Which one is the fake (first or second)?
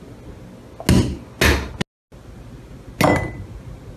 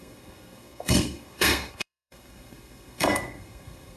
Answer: second